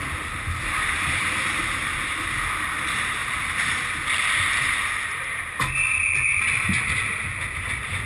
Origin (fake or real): real